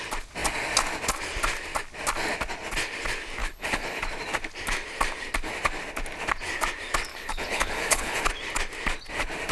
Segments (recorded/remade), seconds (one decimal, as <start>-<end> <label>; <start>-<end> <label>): 0.0-3.4 recorded; 3.4-4.0 remade; 4.0-7.1 recorded; 7.1-8.3 remade; 8.3-9.5 recorded